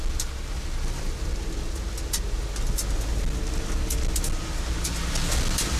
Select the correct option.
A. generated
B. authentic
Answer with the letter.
B